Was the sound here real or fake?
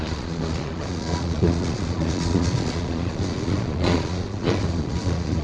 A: fake